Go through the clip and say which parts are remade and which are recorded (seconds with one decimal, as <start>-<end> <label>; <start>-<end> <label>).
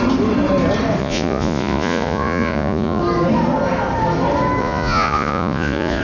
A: 0.0-1.0 recorded; 1.0-3.0 remade; 3.0-4.6 recorded; 4.6-6.0 remade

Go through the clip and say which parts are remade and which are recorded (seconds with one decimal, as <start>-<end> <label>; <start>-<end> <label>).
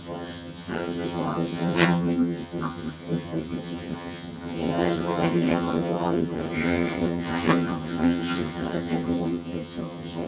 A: 0.0-10.3 remade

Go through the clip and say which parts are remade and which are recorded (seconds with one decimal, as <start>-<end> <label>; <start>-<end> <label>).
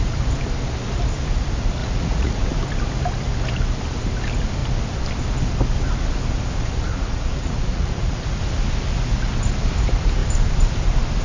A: 0.0-1.8 recorded; 1.8-2.5 remade; 2.5-6.9 recorded; 6.9-8.4 remade; 8.4-11.2 recorded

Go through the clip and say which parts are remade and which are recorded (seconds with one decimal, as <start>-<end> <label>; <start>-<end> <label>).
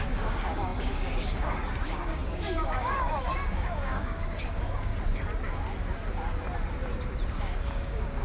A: 0.0-4.9 remade; 4.9-7.3 recorded; 7.3-8.2 remade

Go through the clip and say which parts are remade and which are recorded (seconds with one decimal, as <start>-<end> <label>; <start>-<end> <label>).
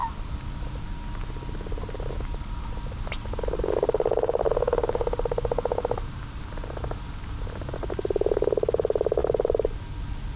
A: 0.0-10.4 recorded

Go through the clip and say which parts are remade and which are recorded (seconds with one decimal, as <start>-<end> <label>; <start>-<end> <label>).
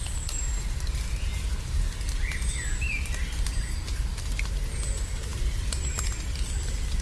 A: 0.0-7.0 recorded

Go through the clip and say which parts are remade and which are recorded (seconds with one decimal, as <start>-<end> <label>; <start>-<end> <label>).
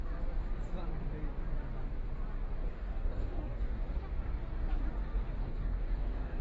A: 0.0-2.7 recorded; 2.7-3.8 remade; 3.8-5.4 recorded; 5.4-6.4 remade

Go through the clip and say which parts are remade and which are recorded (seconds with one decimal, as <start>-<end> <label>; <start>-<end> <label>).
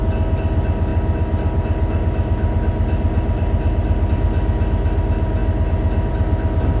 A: 0.0-6.8 recorded